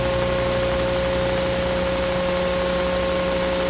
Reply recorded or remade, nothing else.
recorded